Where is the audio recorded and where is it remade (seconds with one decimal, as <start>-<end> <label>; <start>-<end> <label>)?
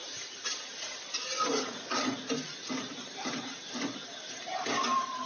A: 0.0-5.3 recorded